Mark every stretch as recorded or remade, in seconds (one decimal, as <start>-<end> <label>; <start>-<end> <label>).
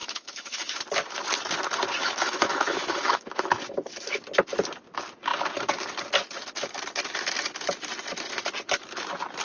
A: 0.0-0.8 remade; 0.8-2.0 recorded; 2.0-4.2 remade; 4.2-9.4 recorded